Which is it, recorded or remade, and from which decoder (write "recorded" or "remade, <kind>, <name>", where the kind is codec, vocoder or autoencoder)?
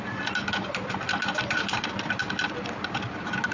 recorded